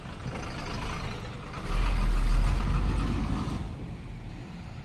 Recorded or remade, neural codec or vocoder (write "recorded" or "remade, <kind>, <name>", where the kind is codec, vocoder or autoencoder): recorded